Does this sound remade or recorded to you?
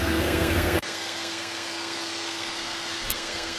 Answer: remade